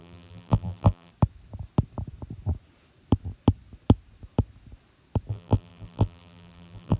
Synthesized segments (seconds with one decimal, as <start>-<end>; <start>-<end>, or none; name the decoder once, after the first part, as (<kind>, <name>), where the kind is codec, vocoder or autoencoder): 0.0-1.1 (vocoder, BigVGAN v2); 5.3-7.0